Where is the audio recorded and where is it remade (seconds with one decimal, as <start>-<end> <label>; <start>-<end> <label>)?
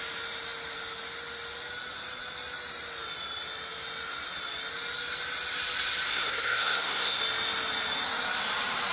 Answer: 0.0-6.1 recorded; 6.1-7.2 remade; 7.2-8.9 recorded